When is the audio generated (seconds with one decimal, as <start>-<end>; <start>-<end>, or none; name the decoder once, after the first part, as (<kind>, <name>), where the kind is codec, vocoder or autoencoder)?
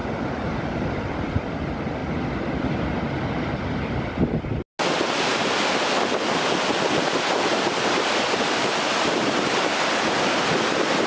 none